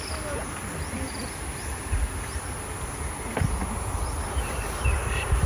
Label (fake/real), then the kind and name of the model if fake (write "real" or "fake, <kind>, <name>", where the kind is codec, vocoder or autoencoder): real